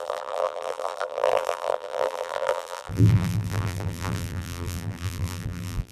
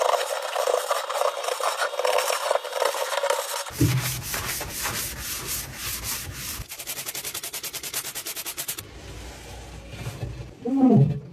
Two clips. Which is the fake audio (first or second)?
first